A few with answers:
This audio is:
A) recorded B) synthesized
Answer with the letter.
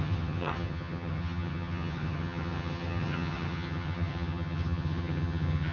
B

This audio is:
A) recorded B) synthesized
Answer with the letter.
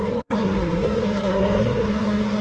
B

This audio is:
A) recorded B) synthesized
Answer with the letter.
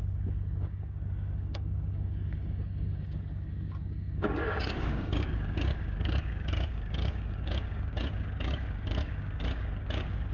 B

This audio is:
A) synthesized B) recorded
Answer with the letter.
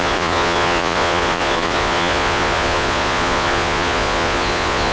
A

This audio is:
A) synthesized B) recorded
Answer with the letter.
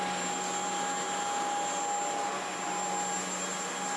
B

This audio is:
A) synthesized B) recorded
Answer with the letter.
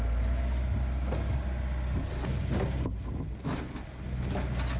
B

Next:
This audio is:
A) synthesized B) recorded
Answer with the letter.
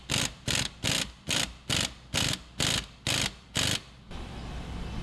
B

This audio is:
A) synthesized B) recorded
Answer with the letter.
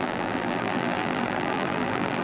A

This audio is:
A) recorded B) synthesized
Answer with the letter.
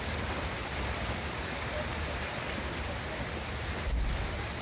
A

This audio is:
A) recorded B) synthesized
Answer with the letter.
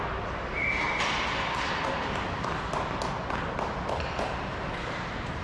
A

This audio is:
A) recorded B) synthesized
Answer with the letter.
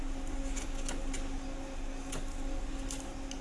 A